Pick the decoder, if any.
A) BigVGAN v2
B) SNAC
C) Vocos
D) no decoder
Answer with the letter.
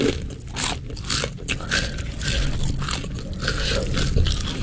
D